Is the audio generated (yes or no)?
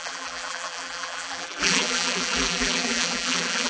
yes